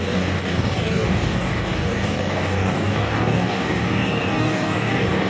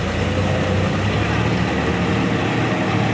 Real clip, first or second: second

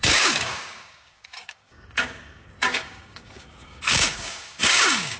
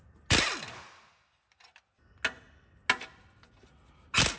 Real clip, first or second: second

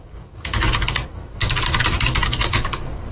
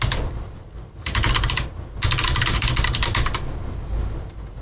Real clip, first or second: second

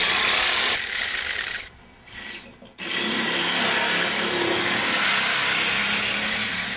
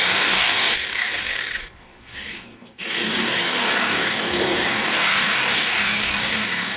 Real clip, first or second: first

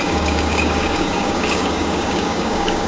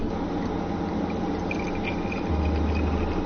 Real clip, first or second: second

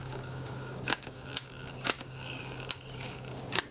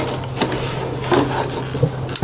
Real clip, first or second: second